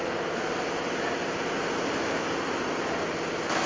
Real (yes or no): yes